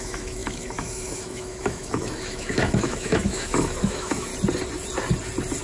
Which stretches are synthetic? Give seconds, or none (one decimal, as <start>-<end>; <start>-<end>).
0.0-4.3